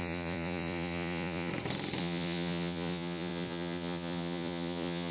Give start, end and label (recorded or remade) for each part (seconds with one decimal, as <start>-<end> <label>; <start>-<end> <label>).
0.0-1.5 remade; 1.5-2.0 recorded; 2.0-5.1 remade